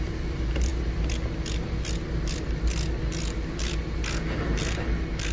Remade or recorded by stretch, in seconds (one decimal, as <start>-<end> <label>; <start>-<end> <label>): 0.0-5.3 recorded